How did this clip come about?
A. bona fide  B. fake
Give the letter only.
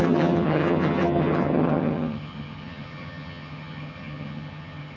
B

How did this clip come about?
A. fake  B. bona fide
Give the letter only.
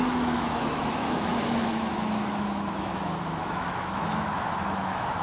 A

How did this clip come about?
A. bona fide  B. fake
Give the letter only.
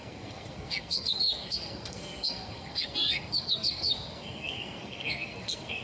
B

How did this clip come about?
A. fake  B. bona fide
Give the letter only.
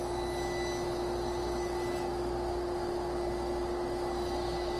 B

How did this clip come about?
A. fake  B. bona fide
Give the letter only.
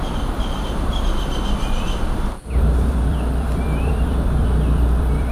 A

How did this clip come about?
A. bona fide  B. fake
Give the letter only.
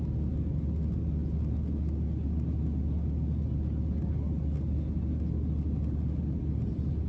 A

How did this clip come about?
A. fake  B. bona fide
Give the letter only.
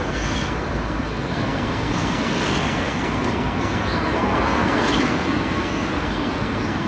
A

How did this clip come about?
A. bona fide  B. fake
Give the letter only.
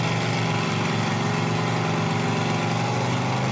A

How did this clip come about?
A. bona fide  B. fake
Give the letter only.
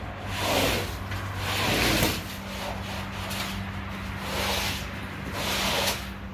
A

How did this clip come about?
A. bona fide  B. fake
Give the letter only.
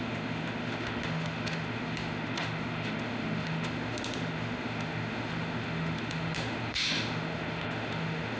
B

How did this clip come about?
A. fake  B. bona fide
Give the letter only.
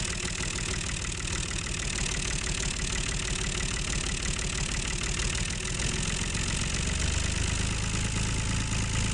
B